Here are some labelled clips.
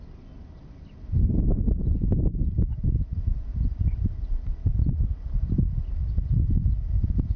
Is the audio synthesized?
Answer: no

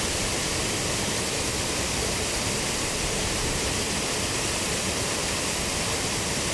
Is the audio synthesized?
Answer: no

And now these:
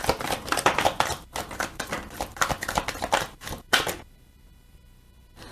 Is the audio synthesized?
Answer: yes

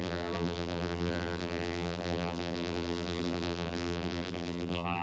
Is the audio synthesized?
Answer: yes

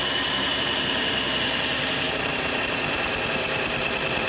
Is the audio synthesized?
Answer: yes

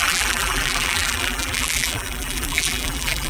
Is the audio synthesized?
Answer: yes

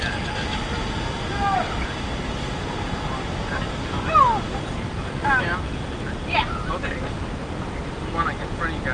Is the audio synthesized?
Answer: no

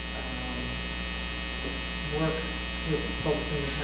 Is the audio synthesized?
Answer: no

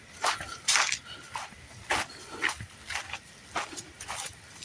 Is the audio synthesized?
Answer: no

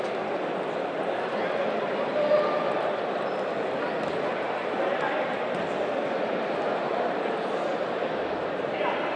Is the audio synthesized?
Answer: yes